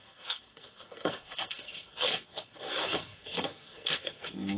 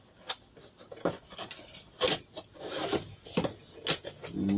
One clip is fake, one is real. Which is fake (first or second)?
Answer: first